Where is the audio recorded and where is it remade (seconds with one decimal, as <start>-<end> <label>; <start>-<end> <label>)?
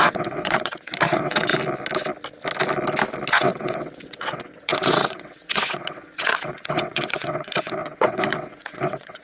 0.0-1.5 remade; 1.5-3.3 recorded; 3.3-9.2 remade